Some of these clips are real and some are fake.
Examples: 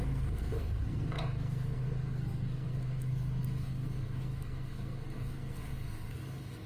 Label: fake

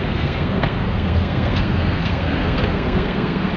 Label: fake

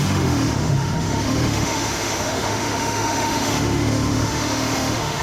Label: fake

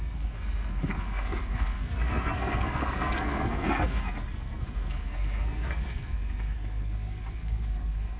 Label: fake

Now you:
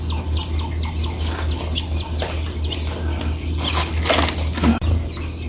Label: real